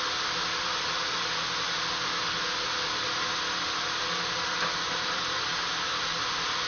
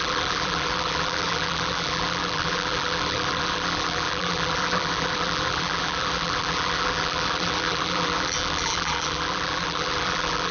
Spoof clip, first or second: second